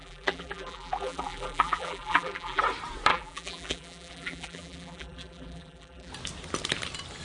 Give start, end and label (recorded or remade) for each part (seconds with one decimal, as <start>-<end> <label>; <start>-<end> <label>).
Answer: 0.0-2.6 remade; 2.6-3.1 recorded; 3.1-6.1 remade; 6.1-7.2 recorded